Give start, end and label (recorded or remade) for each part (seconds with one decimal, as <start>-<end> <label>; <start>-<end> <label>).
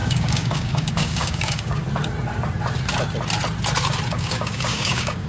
0.0-1.8 remade; 1.8-4.1 recorded; 4.1-5.3 remade